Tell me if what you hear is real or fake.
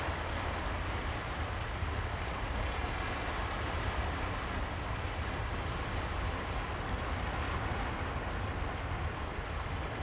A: real